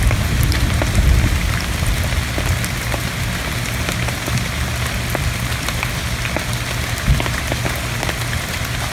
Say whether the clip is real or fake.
real